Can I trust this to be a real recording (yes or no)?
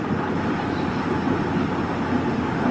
yes